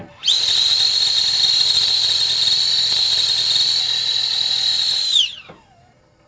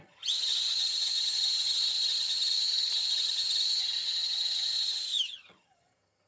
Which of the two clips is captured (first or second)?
first